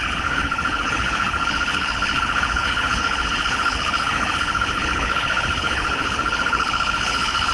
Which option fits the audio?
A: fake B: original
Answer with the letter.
A